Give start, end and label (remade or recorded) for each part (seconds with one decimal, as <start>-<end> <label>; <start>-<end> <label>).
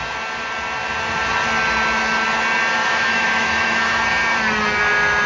0.0-2.8 recorded; 2.8-4.0 remade; 4.0-5.3 recorded